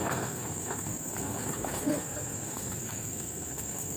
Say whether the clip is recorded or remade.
remade